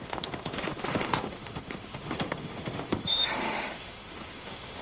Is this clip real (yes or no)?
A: no